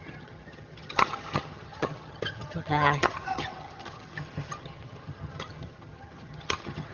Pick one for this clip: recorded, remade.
remade